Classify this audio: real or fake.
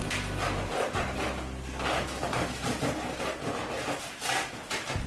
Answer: real